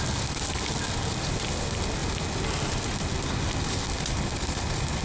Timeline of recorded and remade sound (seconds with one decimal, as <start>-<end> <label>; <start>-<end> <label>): 0.0-5.0 recorded